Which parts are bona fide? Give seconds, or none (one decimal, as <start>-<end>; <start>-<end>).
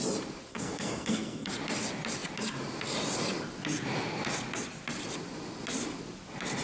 0.0-0.5; 1.5-6.6